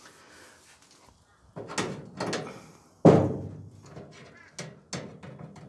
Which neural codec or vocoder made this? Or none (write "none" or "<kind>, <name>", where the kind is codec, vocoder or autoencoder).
none